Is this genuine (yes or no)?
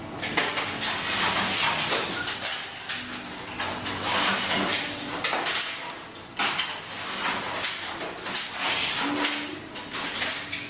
yes